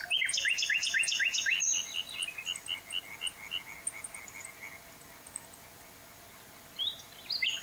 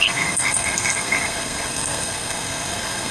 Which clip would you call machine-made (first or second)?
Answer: second